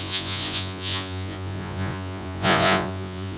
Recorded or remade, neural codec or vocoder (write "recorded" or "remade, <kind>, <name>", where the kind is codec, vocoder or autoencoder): remade, vocoder, Vocos